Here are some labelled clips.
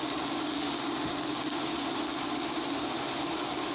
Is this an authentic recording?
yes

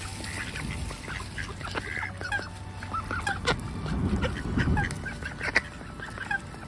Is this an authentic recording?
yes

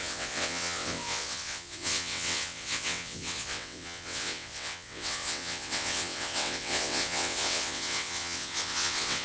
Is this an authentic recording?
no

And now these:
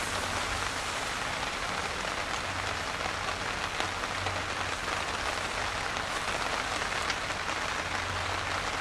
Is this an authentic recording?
yes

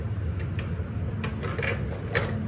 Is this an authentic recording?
yes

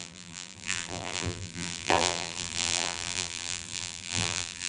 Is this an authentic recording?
no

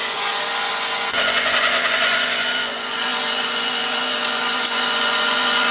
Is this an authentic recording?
no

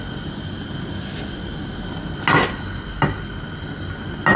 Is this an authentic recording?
yes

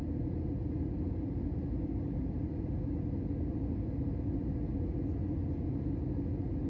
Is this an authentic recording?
yes